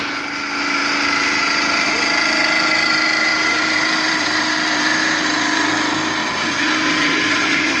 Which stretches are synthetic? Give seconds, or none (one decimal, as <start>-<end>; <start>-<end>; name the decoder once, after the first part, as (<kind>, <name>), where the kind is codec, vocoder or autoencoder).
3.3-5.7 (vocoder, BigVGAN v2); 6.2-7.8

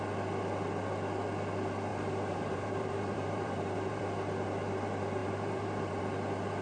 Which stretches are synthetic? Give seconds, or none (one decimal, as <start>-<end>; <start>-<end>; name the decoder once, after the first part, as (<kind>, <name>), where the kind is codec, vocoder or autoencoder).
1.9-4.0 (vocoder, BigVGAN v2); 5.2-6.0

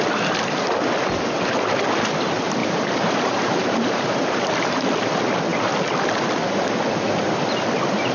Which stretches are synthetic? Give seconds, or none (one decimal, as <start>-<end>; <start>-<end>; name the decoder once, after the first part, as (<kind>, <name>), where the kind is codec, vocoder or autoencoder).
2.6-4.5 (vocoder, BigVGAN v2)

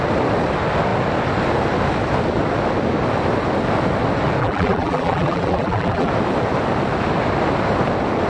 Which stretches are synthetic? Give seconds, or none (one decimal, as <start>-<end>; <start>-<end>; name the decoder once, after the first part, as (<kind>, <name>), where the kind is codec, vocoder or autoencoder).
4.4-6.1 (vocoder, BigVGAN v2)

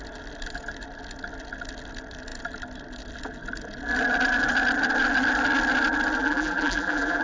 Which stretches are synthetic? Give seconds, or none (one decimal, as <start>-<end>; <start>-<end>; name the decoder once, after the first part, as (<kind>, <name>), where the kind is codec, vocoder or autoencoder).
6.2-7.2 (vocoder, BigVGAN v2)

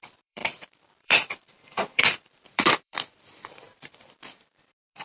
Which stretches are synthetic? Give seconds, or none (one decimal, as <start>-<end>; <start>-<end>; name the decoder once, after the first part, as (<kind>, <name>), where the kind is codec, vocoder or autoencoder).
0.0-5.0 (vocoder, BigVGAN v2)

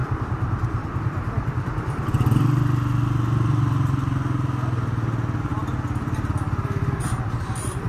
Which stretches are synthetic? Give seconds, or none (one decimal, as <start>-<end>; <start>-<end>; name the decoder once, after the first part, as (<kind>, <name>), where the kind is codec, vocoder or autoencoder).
0.0-2.1 (vocoder, BigVGAN v2); 5.5-6.9